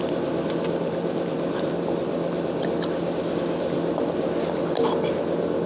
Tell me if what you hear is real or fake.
real